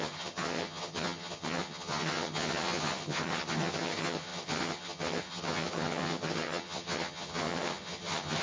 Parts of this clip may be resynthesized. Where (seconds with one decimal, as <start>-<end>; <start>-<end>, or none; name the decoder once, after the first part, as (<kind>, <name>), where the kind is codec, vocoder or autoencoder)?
0.0-8.4 (vocoder, HiFi-GAN)